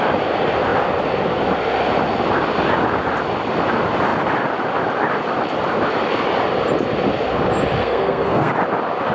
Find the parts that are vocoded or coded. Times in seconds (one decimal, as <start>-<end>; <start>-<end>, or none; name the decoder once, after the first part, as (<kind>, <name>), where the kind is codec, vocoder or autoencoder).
7.8-8.5 (codec, SNAC)